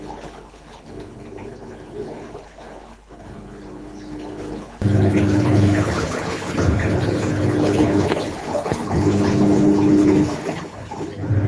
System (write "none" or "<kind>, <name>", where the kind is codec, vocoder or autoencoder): codec, HILCodec